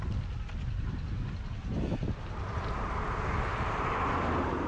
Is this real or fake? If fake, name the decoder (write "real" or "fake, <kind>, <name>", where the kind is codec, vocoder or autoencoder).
real